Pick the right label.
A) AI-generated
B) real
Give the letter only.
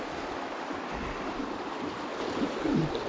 B